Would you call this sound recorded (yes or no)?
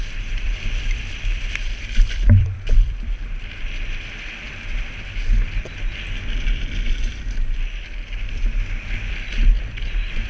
no